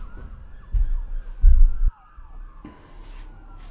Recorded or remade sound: recorded